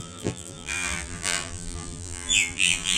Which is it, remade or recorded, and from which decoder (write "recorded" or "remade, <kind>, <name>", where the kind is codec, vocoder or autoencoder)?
remade, vocoder, BigVGAN v2